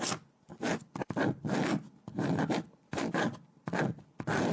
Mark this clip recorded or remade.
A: recorded